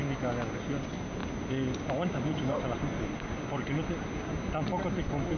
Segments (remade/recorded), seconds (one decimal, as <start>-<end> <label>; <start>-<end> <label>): 0.0-5.4 recorded